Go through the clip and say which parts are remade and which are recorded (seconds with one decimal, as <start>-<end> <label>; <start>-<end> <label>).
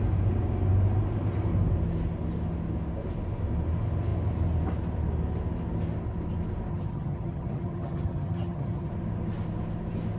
0.0-6.7 recorded; 6.7-8.9 remade; 8.9-10.2 recorded